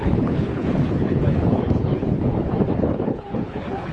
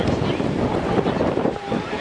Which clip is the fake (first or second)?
first